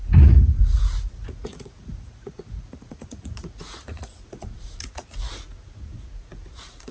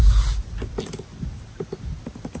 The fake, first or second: first